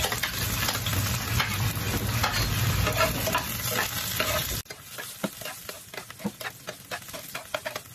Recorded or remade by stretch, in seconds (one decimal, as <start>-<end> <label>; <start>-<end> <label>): 0.0-7.9 recorded